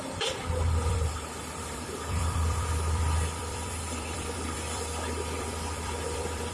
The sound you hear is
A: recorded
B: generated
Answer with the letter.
B